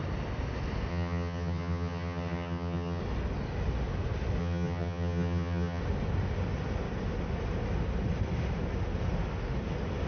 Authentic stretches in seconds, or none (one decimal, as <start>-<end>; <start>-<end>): 0.0-0.9; 3.0-4.4; 5.8-10.1

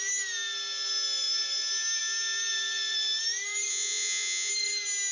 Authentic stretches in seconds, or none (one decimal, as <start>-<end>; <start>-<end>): 0.0-3.7; 4.5-5.1